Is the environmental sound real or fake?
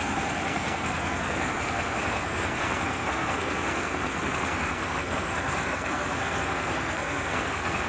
fake